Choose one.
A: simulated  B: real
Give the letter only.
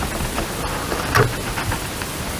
B